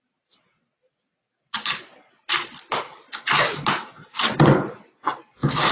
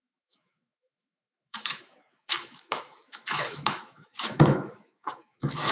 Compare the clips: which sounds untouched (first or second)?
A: first